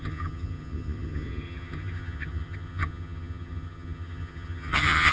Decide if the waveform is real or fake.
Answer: fake